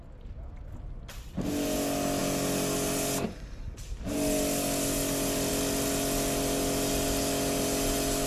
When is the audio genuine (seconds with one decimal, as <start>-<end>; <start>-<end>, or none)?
0.0-8.3